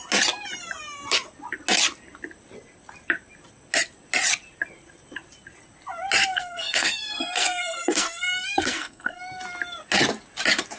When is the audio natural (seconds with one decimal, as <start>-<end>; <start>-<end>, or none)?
0.0-6.3; 9.2-10.8